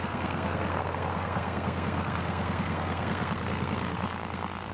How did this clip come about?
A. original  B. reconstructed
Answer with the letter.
B